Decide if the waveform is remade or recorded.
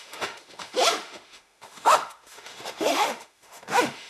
remade